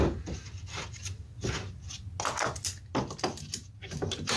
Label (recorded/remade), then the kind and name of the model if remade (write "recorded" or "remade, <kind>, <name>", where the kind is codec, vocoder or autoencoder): recorded